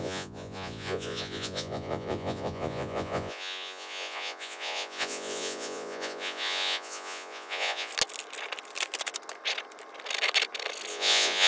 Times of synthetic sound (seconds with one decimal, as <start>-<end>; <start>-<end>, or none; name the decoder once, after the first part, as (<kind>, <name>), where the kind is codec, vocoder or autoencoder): 0.0-7.9 (vocoder, Vocos); 10.9-11.5